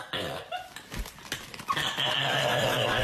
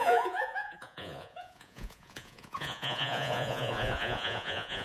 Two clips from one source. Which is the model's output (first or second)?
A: second